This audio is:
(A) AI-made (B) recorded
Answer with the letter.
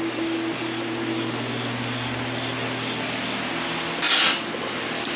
B